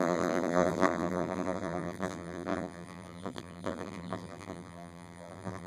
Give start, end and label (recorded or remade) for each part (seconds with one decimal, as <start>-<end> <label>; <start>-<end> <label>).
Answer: 0.0-5.7 remade